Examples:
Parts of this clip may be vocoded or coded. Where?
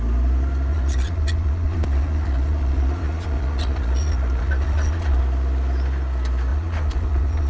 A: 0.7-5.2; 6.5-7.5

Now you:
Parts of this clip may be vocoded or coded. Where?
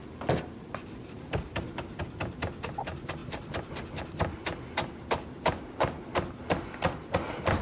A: 0.0-2.0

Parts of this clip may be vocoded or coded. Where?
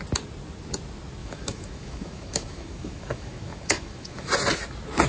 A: 1.2-4.3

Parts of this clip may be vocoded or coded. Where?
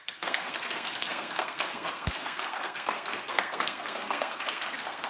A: 0.0-5.1